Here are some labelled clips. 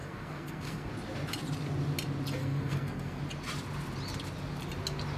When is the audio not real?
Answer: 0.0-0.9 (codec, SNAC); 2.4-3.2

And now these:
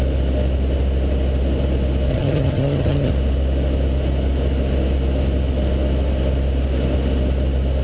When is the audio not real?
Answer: 2.1-3.1 (vocoder, HiFi-GAN)

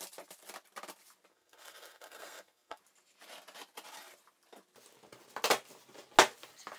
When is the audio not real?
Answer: 1.3-2.8 (codec, SNAC)

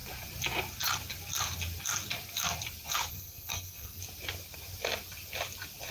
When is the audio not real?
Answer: 3.1-4.0 (codec, SNAC)